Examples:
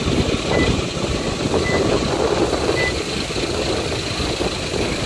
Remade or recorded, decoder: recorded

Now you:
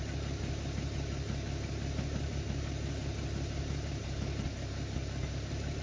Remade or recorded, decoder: recorded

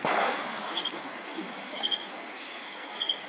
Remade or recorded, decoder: remade, codec, SNAC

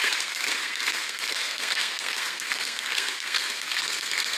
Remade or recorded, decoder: remade, codec, SNAC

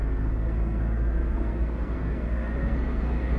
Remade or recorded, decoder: remade, codec, SNAC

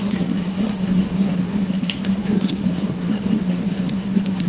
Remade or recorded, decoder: remade, codec, SNAC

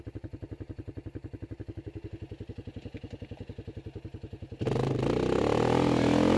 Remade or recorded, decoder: recorded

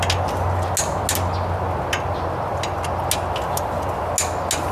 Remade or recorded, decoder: recorded